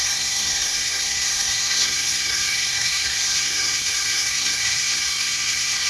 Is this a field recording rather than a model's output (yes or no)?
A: no